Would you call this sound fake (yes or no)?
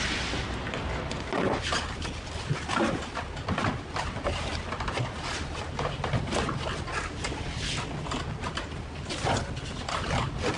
no